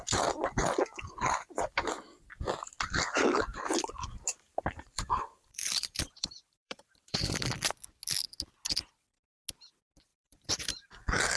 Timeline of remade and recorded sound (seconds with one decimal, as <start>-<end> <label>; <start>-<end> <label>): 0.0-4.3 recorded; 4.3-7.2 remade; 7.2-10.1 recorded; 10.1-10.9 remade; 10.9-11.4 recorded